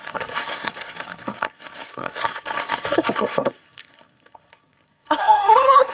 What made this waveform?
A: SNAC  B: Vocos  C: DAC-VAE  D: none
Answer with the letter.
A